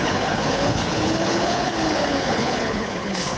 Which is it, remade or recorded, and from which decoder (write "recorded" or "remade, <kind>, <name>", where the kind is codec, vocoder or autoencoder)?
remade, codec, HILCodec